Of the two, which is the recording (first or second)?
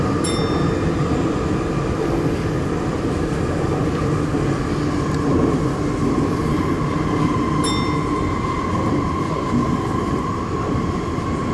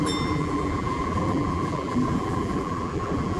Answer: first